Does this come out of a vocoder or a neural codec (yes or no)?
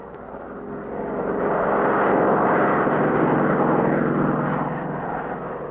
no